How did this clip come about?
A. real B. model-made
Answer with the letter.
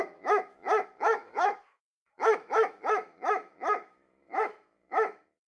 B